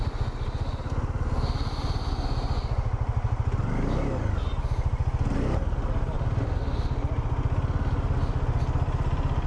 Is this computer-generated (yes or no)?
no